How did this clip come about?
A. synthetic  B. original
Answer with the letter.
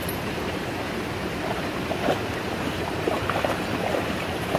A